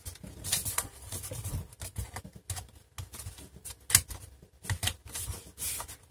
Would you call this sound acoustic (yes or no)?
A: yes